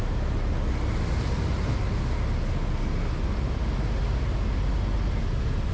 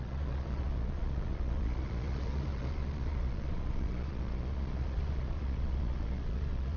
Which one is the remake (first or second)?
second